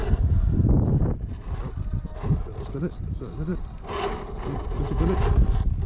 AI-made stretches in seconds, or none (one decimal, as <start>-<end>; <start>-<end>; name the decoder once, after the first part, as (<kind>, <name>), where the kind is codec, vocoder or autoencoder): none